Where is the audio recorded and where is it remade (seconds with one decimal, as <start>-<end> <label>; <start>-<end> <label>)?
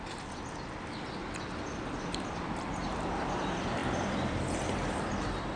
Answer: 0.0-1.2 remade; 1.2-1.7 recorded; 1.7-5.6 remade